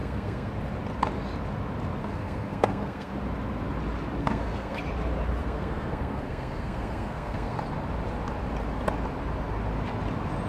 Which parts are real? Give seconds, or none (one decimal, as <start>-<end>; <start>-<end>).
0.5-2.0; 3.1-4.2; 4.8-5.4; 7.6-10.5